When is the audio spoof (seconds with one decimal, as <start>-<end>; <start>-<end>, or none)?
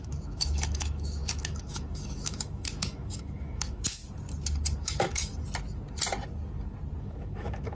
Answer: 0.0-4.0; 4.8-5.3; 7.0-7.7